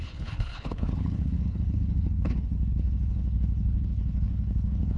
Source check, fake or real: fake